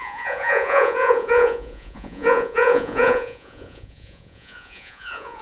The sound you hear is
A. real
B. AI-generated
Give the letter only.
B